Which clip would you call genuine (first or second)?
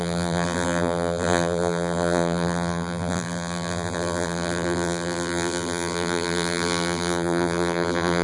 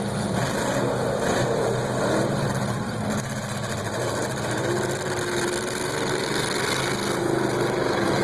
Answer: second